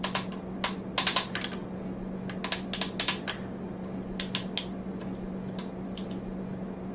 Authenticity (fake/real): real